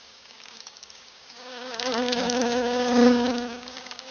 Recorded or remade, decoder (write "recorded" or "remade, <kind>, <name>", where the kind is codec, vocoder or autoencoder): remade, codec, DAC